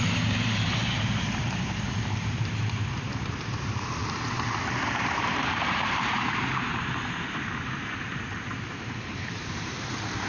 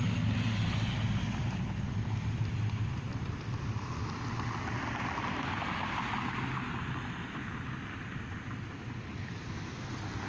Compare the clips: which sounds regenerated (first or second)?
first